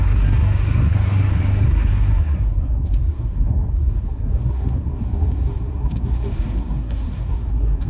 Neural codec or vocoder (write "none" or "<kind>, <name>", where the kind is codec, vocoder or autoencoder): codec, SNAC